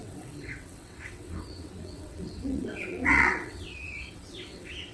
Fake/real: fake